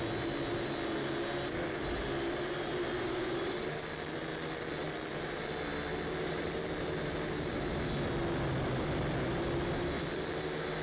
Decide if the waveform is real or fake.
real